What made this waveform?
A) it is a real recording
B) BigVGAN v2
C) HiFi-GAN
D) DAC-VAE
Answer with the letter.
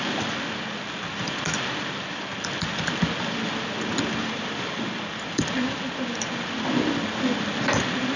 A